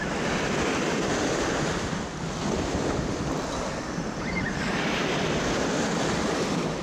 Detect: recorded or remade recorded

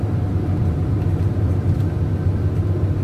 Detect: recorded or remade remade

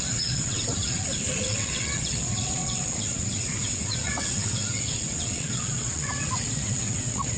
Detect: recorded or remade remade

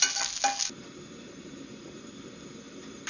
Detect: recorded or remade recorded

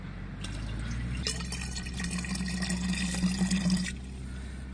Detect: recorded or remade recorded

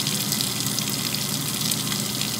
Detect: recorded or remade recorded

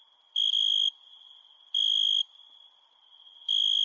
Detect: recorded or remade recorded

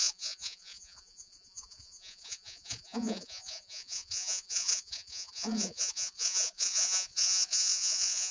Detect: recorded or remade remade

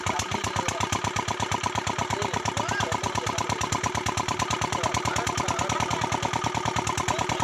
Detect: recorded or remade recorded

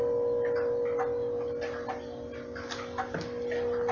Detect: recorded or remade recorded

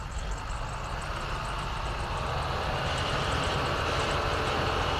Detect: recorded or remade recorded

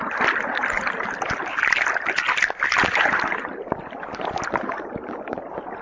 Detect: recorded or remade recorded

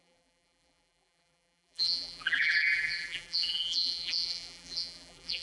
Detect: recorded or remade remade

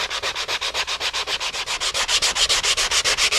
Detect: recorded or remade recorded